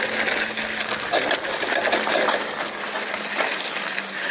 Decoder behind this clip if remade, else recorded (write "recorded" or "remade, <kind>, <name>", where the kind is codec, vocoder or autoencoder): recorded